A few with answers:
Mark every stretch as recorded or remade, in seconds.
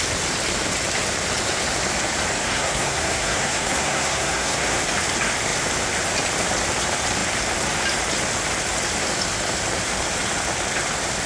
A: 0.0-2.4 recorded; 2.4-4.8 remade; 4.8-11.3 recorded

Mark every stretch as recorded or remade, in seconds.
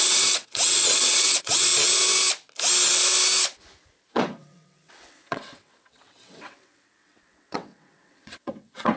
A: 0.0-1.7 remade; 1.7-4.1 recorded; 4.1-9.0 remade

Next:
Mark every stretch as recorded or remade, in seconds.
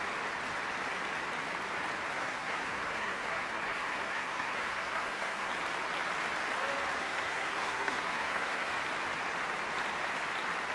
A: 0.0-2.1 recorded; 2.1-5.5 remade; 5.5-7.0 recorded; 7.0-8.7 remade; 8.7-10.7 recorded